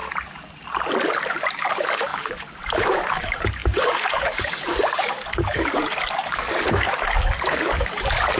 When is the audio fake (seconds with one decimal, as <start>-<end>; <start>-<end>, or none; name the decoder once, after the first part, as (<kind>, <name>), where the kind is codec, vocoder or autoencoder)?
1.6-8.4 (codec, DAC)